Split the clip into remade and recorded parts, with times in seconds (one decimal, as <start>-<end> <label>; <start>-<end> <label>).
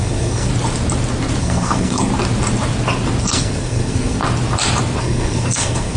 0.0-0.5 remade; 0.5-1.4 recorded; 1.4-2.1 remade; 2.1-3.2 recorded; 3.2-4.2 remade; 4.2-5.0 recorded; 5.0-6.0 remade